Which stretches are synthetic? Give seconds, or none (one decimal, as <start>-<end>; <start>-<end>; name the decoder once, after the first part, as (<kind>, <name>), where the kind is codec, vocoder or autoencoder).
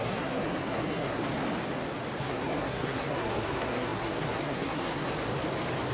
0.0-1.2 (codec, SNAC); 2.2-5.1